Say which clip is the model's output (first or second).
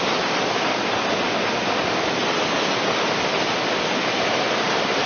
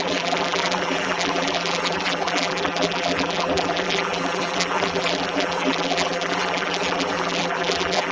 second